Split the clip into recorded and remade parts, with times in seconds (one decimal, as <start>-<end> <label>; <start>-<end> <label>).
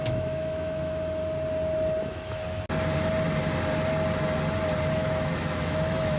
0.0-1.2 remade; 1.2-2.0 recorded; 2.0-2.4 remade; 2.4-4.9 recorded; 4.9-6.2 remade